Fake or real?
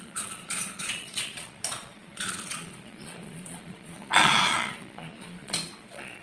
fake